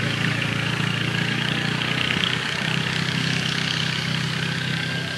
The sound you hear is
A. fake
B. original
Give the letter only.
A